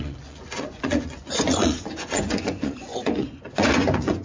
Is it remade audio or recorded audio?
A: remade